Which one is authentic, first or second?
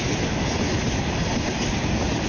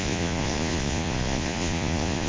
first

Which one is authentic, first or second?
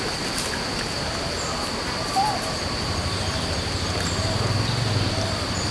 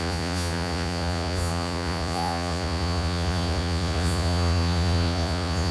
first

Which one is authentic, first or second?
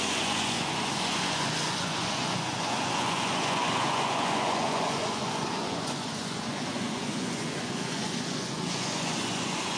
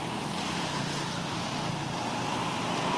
second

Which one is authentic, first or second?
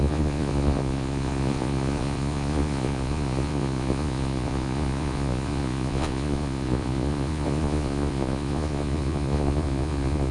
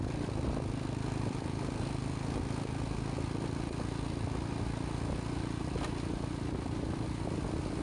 second